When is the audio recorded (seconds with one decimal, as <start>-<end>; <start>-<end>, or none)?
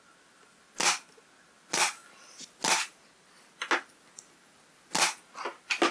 0.0-5.9